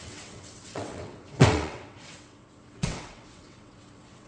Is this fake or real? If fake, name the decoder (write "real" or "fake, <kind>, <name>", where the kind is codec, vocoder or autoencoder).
fake, vocoder, WaveNeXt